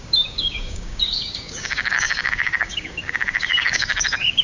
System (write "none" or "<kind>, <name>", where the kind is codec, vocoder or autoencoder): codec, DAC